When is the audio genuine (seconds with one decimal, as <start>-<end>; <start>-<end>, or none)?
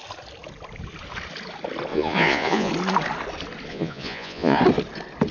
0.0-1.9; 2.7-3.7; 4.6-5.3